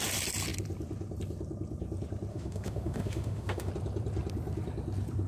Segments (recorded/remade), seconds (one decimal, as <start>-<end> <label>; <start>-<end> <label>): 0.0-2.3 recorded; 2.3-3.7 remade; 3.7-5.3 recorded